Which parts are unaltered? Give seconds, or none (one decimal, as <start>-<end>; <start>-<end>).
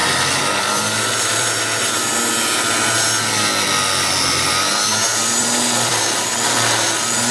0.0-0.6; 2.1-4.3; 6.3-7.3